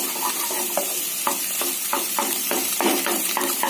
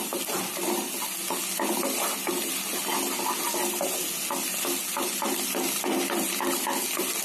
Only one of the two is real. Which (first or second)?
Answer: second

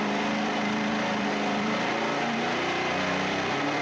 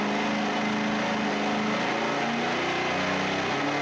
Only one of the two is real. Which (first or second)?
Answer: second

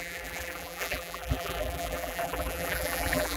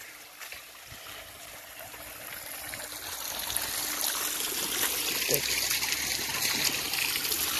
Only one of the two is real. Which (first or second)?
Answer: second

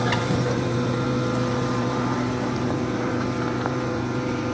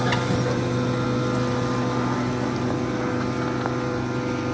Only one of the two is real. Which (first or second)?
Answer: second